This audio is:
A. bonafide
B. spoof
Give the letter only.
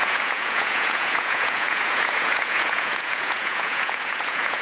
B